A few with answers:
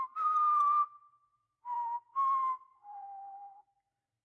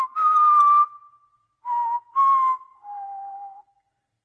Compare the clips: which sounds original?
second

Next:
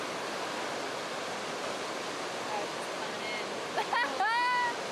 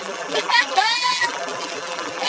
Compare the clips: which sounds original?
first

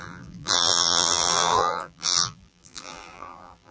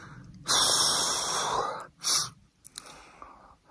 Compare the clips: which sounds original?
second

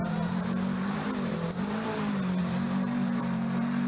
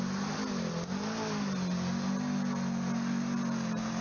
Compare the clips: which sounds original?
second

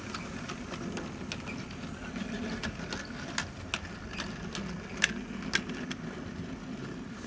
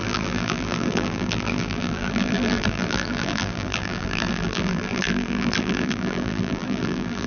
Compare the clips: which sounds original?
first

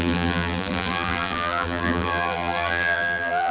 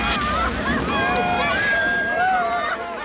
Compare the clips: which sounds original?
second